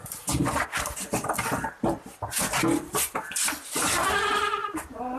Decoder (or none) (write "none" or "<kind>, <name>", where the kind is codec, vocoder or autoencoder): none